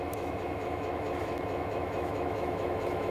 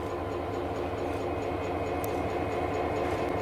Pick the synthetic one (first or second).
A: first